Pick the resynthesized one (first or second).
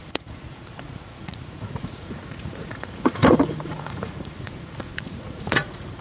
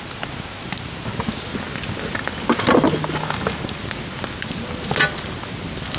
first